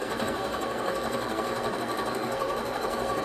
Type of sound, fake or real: fake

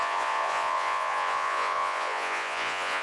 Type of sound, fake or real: fake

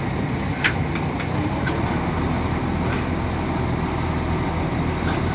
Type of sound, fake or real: real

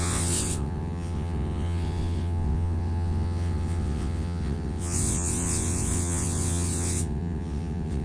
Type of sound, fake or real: fake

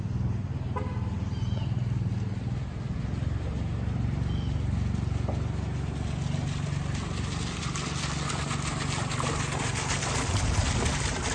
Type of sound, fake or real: real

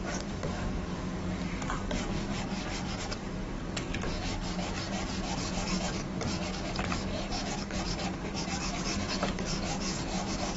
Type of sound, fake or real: fake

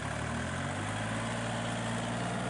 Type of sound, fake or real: real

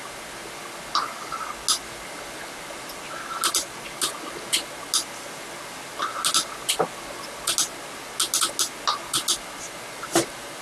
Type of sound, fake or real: real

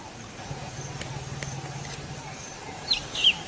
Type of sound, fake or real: real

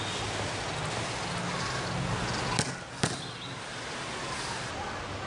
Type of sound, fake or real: real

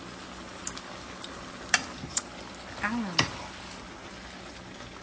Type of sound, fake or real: real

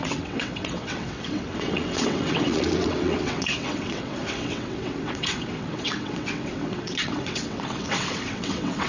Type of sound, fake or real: fake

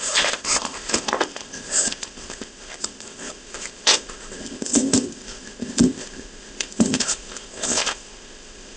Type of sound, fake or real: fake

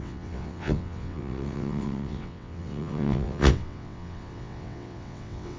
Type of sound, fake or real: fake